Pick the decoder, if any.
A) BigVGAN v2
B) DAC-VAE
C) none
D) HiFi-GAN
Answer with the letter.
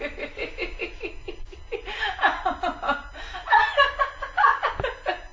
C